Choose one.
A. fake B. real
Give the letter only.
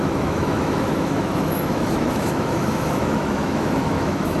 A